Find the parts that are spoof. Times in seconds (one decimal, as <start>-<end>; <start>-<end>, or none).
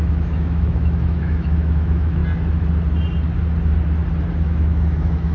0.0-2.2; 4.4-5.3